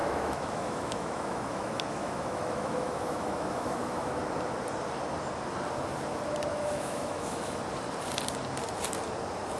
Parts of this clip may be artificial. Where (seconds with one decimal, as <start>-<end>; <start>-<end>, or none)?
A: 0.0-4.2; 6.5-7.6